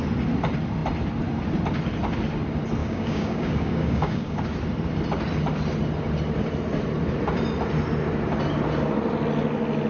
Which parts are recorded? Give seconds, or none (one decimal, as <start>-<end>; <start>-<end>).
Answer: 0.0-2.8; 4.4-9.9